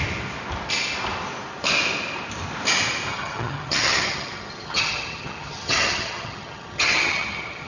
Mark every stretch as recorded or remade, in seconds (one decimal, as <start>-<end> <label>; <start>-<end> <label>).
0.0-3.1 recorded; 3.1-7.7 remade